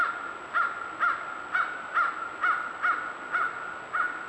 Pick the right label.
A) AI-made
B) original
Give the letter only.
B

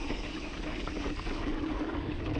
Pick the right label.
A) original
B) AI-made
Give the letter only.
B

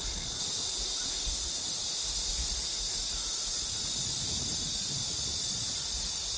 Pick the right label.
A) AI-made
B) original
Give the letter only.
B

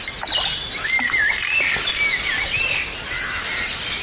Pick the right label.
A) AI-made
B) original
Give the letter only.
B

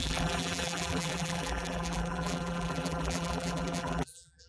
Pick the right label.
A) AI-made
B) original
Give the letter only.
A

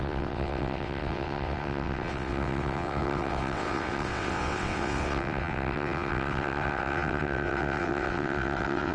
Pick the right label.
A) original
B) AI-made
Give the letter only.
B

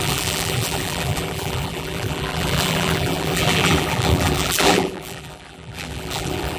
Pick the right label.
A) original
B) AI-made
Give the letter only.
B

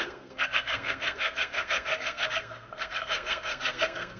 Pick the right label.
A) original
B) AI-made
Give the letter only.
B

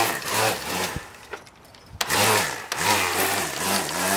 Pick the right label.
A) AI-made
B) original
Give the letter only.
A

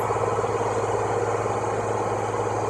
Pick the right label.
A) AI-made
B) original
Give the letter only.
B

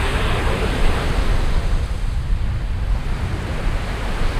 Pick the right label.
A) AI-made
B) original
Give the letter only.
B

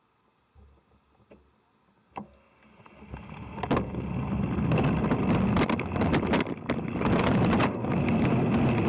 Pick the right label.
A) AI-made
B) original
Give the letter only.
B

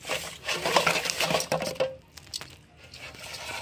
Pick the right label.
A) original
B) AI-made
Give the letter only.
A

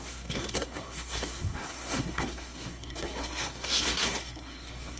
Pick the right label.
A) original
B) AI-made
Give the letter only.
B